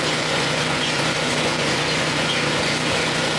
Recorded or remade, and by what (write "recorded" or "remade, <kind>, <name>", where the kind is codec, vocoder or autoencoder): remade, vocoder, Vocos